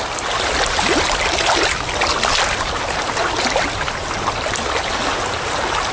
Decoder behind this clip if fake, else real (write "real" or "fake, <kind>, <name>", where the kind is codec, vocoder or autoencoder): real